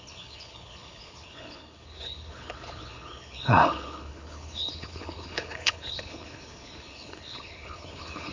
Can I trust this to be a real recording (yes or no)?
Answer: no